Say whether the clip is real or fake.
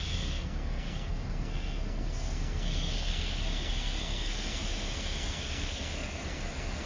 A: fake